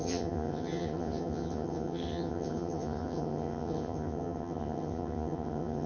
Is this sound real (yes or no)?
no